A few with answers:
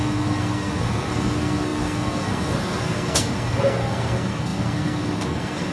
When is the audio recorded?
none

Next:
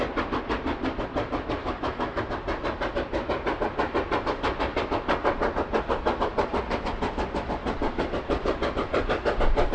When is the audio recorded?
0.0-1.6; 2.2-9.7

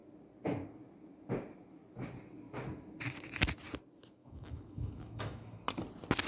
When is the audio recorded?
0.0-4.2; 5.6-6.3

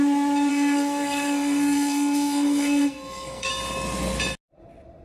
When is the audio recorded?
0.0-0.5; 3.5-5.0

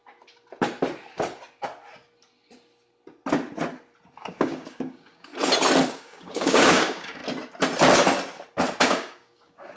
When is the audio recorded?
0.0-4.2; 5.3-5.9; 7.2-8.8